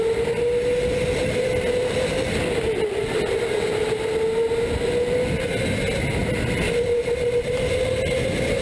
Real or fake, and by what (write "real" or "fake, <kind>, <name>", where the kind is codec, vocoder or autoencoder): real